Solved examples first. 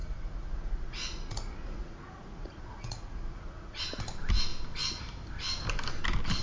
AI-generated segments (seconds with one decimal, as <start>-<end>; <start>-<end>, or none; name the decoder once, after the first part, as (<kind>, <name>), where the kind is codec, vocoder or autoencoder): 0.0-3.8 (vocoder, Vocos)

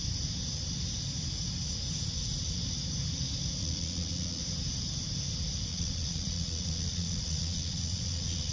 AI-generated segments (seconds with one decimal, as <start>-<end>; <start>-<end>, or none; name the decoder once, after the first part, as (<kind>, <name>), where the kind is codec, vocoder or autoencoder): 3.6-4.4 (vocoder, Vocos); 5.7-8.5

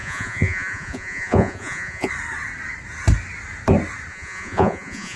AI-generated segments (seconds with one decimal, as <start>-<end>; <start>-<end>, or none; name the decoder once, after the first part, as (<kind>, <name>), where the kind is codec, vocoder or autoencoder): 0.0-2.1 (vocoder, Vocos); 4.1-5.2

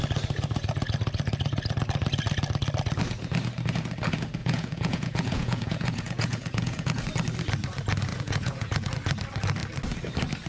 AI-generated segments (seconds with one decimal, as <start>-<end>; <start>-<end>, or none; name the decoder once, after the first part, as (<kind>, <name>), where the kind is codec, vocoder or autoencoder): 4.4-7.0 (vocoder, Vocos); 8.1-8.9